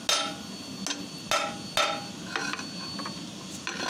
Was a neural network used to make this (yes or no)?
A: no